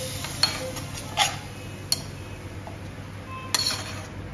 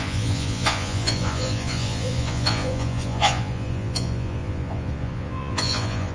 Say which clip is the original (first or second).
first